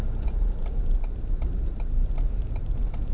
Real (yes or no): yes